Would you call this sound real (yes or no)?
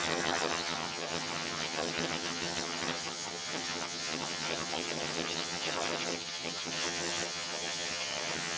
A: no